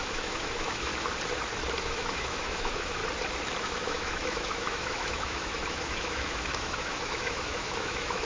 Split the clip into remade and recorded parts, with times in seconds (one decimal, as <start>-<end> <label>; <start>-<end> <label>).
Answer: 0.0-0.9 remade; 0.9-1.8 recorded; 1.8-3.0 remade; 3.0-3.6 recorded; 3.6-8.2 remade